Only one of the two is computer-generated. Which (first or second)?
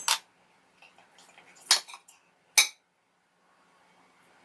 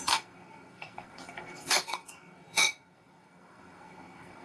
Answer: second